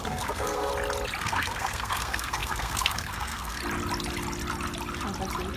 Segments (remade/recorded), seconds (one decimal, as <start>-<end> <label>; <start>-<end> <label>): 0.0-0.7 remade; 0.7-1.2 recorded; 1.2-3.6 remade; 3.6-5.6 recorded